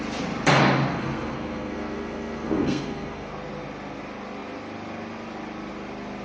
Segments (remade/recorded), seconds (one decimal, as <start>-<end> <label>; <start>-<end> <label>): 0.0-0.9 recorded; 0.9-3.3 remade; 3.3-6.2 recorded